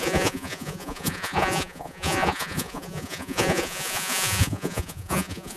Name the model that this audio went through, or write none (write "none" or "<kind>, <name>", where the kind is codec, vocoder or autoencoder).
vocoder, Vocos